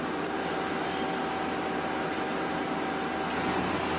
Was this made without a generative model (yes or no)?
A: yes